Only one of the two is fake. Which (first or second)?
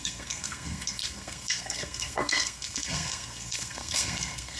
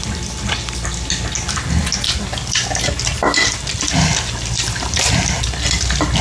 first